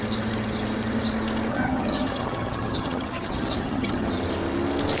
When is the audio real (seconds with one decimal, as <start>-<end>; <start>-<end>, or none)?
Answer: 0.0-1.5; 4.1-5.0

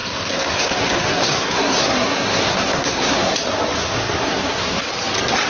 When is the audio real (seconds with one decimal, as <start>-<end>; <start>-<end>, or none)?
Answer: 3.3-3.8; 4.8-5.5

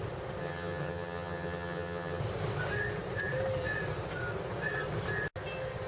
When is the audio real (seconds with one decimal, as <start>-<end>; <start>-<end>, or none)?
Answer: 0.0-0.4; 2.2-5.9

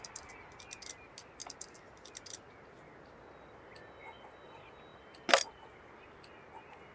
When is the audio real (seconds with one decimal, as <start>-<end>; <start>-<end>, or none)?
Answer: 0.0-6.9

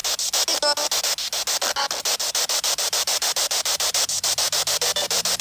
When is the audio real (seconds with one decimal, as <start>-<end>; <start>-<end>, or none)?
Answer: 0.0-2.2

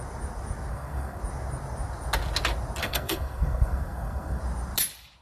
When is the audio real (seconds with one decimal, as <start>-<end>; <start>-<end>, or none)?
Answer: 0.0-0.7; 1.2-2.8; 4.4-5.2